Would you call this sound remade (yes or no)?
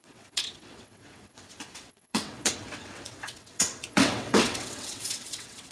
yes